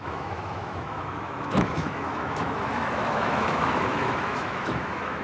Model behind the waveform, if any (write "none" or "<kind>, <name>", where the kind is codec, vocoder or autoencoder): autoencoder, DAC-VAE